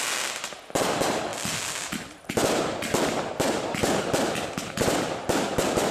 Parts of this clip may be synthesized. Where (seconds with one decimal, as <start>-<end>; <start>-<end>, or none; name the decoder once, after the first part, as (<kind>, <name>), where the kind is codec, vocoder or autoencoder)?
none

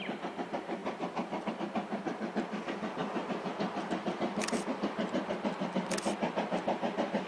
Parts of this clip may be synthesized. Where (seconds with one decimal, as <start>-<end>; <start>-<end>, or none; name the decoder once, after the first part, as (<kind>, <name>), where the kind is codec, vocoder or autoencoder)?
none

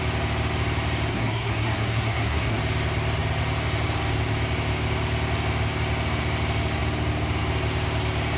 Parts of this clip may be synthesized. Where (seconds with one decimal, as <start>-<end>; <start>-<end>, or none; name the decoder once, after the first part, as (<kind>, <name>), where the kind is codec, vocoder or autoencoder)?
1.1-2.6 (codec, SNAC)

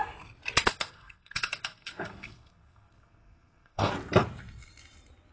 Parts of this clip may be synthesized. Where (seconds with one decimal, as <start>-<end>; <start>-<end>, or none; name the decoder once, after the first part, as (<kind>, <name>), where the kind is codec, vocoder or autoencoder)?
0.7-3.9 (codec, SNAC)

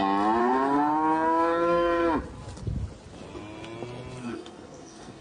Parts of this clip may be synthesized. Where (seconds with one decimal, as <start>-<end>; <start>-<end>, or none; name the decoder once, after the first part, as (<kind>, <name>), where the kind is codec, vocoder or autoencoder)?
0.4-2.1 (codec, SNAC); 4.2-5.2

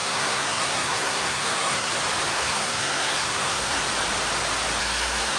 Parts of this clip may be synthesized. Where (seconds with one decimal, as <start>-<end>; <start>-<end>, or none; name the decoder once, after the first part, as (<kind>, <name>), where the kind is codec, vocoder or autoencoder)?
0.0-1.9 (codec, SNAC); 2.3-3.8; 4.8-5.4